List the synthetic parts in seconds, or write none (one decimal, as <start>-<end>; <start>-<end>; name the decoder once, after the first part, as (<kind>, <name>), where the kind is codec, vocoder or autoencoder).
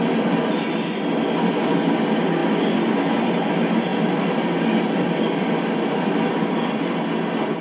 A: none